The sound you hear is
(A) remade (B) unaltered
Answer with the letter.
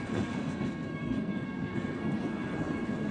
A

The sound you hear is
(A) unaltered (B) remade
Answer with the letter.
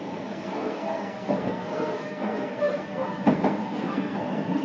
B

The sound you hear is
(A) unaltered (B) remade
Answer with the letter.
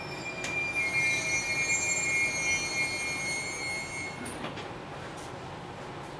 A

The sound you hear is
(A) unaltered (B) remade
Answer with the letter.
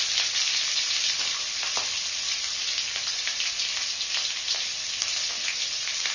A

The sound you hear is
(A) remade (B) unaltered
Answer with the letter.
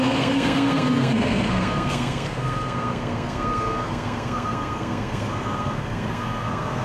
A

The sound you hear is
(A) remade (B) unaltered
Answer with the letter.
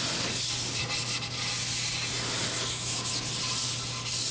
B